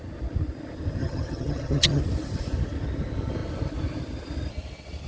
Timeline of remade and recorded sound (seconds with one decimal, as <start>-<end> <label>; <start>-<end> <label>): 0.0-1.0 recorded; 1.0-2.0 remade; 2.0-5.1 recorded